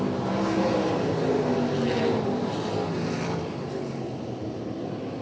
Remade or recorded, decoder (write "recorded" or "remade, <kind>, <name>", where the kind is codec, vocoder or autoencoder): recorded